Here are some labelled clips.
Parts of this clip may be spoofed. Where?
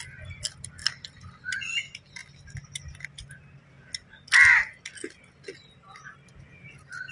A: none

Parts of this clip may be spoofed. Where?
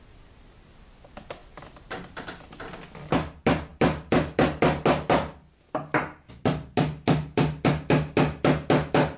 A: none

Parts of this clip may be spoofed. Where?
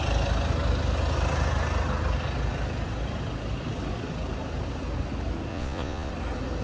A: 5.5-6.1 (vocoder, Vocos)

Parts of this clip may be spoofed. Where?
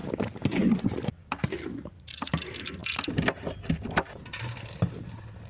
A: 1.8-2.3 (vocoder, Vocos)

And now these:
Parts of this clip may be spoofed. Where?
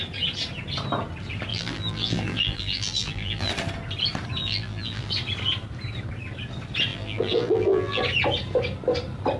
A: 1.5-3.5 (vocoder, BigVGAN v2); 4.4-5.1; 6.9-8.0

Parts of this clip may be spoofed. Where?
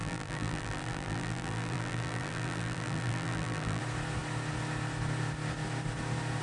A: 0.0-3.8 (vocoder, BigVGAN v2)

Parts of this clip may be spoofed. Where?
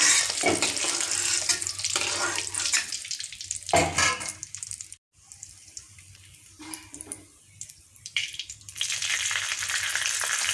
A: 0.0-3.8 (vocoder, BigVGAN v2); 4.4-10.5